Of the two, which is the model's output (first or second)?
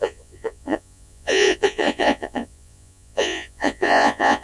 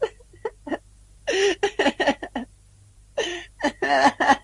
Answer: first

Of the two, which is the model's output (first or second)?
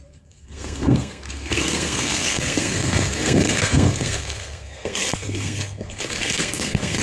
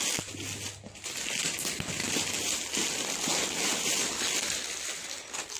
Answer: first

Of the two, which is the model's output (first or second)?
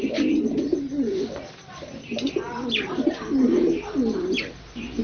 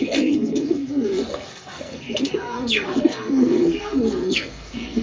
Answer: second